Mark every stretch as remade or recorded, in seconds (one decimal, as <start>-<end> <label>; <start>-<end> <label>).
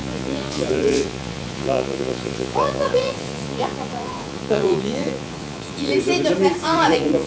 0.0-5.9 remade; 5.9-6.6 recorded; 6.6-7.3 remade